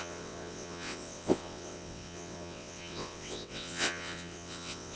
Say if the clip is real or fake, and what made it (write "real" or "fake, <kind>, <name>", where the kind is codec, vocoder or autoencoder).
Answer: fake, vocoder, WaveNeXt